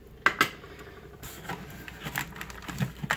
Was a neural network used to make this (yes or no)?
no